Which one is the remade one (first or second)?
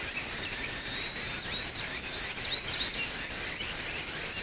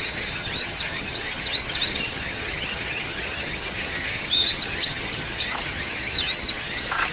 second